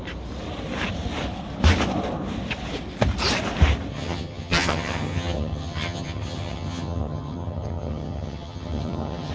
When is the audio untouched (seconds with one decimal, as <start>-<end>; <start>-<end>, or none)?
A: 0.0-3.9